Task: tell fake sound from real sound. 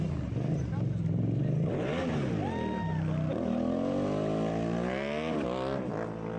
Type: real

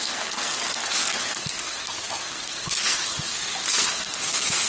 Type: fake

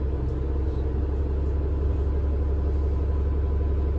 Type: real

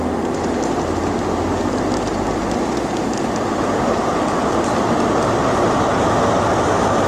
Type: real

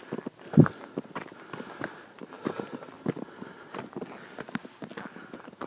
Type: real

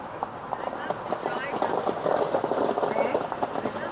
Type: real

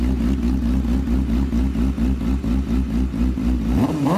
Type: real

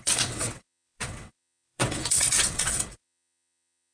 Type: fake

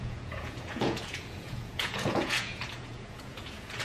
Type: fake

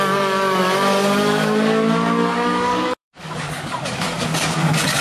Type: fake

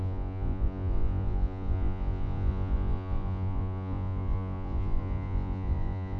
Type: fake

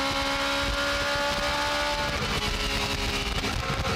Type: real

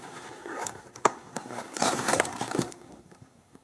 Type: fake